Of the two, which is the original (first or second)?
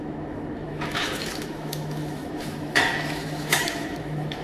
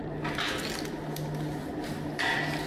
second